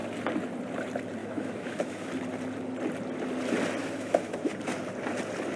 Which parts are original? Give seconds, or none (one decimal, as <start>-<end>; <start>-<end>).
0.0-1.2; 2.1-3.8; 4.5-5.6